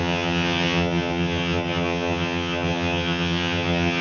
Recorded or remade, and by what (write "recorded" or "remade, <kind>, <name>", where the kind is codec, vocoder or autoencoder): remade, vocoder, HiFi-GAN